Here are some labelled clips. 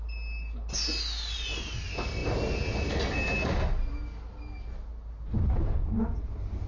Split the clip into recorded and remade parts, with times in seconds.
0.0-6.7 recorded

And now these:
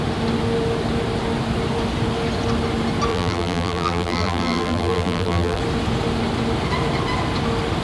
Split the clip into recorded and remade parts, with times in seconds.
0.0-3.1 recorded; 3.1-5.6 remade; 5.6-7.8 recorded

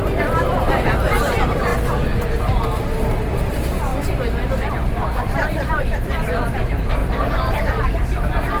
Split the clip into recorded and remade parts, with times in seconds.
0.0-1.7 remade; 1.7-2.4 recorded; 2.4-3.9 remade; 3.9-4.7 recorded; 4.7-8.6 remade

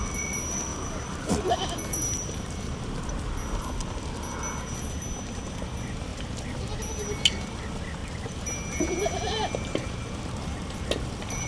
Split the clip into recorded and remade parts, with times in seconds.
0.0-0.7 recorded; 0.7-3.0 remade; 3.0-6.1 recorded; 6.1-6.8 remade; 6.8-8.0 recorded; 8.0-10.2 remade; 10.2-11.5 recorded

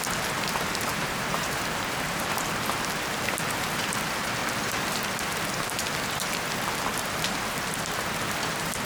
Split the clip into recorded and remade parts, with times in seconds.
0.0-0.9 recorded; 0.9-2.5 remade; 2.5-8.9 recorded

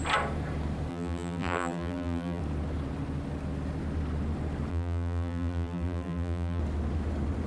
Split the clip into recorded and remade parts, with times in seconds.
0.0-0.9 recorded; 0.9-2.4 remade; 2.4-4.7 recorded; 4.7-6.6 remade; 6.6-7.5 recorded

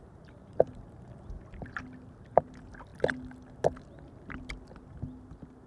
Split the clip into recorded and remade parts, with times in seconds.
0.0-0.4 recorded; 0.4-1.1 remade; 1.1-5.7 recorded

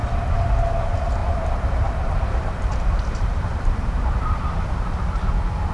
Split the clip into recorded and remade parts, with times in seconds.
0.0-1.2 recorded; 1.2-4.6 remade; 4.6-5.7 recorded